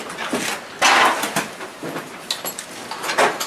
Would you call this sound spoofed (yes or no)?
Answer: no